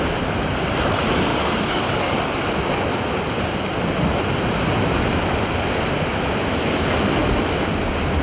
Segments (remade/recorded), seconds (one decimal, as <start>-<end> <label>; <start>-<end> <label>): 0.0-1.3 recorded; 1.3-2.2 remade; 2.2-8.2 recorded